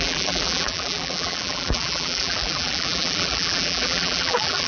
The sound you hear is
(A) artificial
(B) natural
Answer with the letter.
A